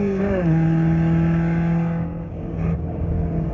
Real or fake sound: fake